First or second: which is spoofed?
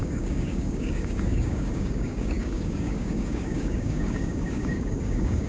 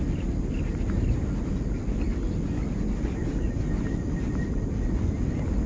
first